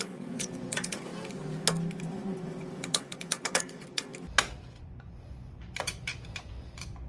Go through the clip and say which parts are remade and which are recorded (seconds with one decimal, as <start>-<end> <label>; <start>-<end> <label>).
0.0-1.1 remade; 1.1-2.0 recorded; 2.0-4.1 remade; 4.1-4.8 recorded; 4.8-7.1 remade